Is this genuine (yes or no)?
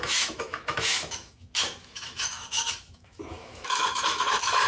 no